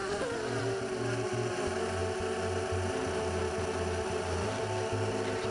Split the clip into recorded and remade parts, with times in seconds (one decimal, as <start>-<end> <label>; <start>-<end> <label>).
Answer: 0.0-5.5 recorded